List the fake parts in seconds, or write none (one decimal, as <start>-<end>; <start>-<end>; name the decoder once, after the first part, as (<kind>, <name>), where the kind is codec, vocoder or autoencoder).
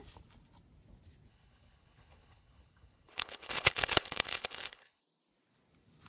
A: 1.3-5.0 (codec, HILCodec)